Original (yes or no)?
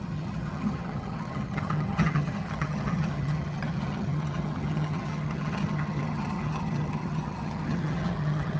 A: no